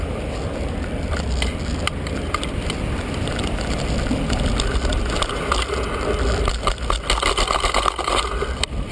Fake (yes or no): no